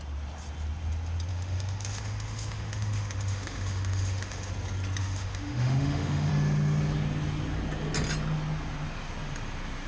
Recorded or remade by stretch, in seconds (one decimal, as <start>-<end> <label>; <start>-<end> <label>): 0.0-1.3 recorded; 1.3-4.5 remade; 4.5-5.0 recorded; 5.0-6.3 remade; 6.3-9.9 recorded